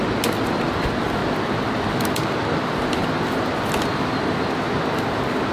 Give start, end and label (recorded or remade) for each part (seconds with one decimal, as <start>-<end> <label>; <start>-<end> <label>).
0.0-5.5 recorded

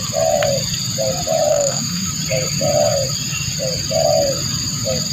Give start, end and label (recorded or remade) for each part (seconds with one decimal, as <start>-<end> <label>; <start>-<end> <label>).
0.0-1.5 recorded; 1.5-2.1 remade; 2.1-5.1 recorded

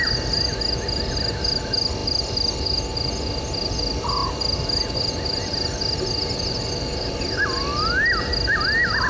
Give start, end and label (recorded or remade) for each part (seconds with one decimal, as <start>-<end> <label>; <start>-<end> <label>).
0.0-9.1 recorded

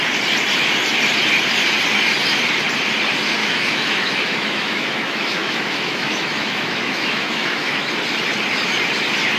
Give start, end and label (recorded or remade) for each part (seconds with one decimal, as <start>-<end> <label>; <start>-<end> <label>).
0.0-3.4 recorded; 3.4-7.9 remade; 7.9-9.4 recorded

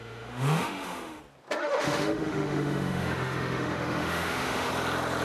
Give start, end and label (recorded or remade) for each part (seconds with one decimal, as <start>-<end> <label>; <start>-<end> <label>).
0.0-1.2 remade; 1.2-1.6 recorded; 1.6-4.7 remade; 4.7-5.2 recorded

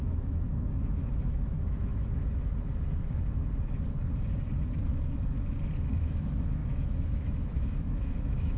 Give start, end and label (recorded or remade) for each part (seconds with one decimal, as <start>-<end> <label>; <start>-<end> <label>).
0.0-1.9 remade; 1.9-5.9 recorded; 5.9-8.6 remade

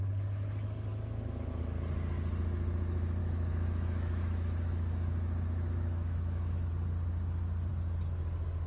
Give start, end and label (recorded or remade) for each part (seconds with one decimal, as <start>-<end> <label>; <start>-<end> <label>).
0.0-0.9 recorded; 0.9-1.6 remade; 1.6-3.2 recorded; 3.2-6.7 remade; 6.7-8.7 recorded